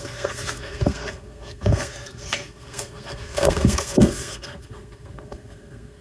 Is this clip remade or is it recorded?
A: remade